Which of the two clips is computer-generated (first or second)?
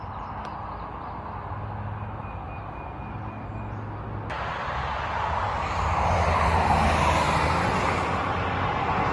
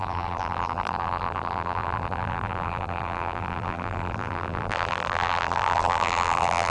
second